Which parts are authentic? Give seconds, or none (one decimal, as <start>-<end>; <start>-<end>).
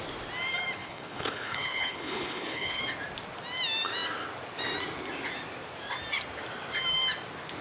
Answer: 0.0-0.8; 2.8-7.6